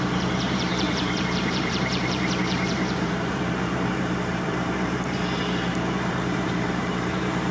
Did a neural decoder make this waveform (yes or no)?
yes